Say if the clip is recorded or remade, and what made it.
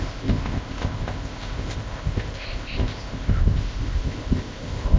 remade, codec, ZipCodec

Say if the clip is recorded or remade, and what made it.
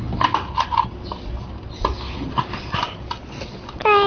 recorded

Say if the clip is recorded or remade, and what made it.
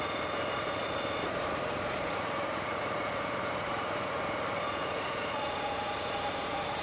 remade, vocoder, Vocos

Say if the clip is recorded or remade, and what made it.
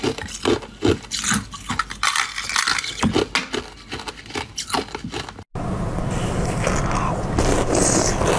recorded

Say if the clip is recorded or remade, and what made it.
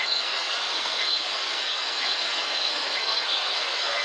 remade, codec, SNAC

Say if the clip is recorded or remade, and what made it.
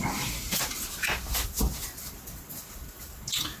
recorded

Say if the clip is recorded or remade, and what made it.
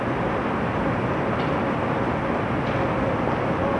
recorded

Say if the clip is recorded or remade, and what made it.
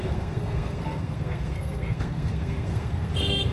remade, codec, SNAC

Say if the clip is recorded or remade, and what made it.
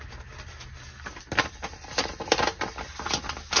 recorded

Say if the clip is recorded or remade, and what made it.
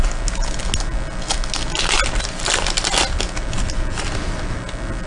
recorded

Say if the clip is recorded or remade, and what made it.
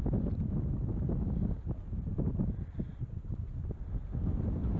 recorded